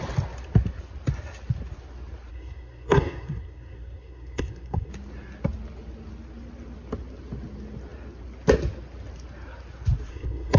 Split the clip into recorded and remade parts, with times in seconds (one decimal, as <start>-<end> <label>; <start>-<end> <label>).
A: 0.0-2.3 recorded; 2.3-4.9 remade; 4.9-10.1 recorded; 10.1-10.6 remade